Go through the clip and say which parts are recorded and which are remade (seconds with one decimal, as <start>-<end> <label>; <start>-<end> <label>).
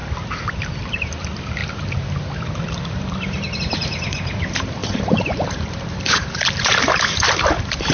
0.0-1.6 recorded; 1.6-3.6 remade; 3.6-4.8 recorded; 4.8-7.0 remade; 7.0-7.9 recorded